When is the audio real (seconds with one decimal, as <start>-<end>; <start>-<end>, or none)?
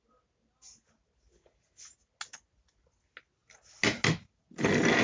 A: 0.0-5.0